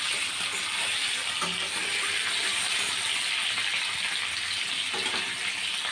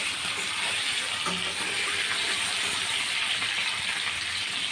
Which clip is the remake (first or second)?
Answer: second